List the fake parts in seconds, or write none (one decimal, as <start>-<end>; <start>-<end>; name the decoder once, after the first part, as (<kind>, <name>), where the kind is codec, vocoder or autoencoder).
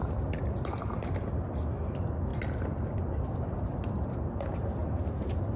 2.3-4.1 (vocoder, BigVGAN v2); 4.8-5.6